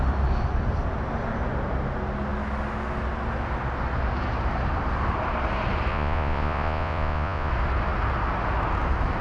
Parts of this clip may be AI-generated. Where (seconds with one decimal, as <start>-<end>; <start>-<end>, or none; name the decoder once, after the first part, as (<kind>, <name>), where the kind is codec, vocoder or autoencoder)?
5.9-7.5 (vocoder, Vocos)